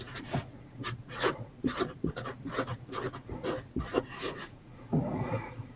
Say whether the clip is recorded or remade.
remade